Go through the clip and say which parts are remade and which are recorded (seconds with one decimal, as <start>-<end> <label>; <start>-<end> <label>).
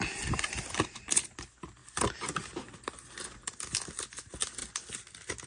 0.0-5.5 recorded